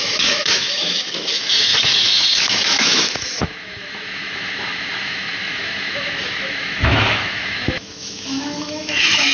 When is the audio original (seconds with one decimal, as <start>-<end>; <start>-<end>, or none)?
none